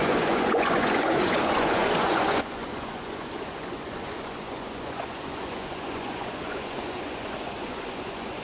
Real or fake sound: fake